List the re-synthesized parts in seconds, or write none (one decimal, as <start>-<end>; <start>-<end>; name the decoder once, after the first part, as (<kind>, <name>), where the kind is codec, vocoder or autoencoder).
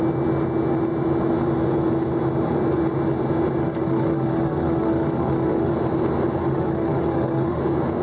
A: 3.6-5.7 (autoencoder, DAC-VAE); 6.4-7.6